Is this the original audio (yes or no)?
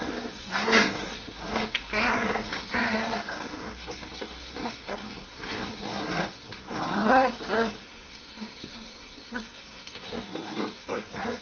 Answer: no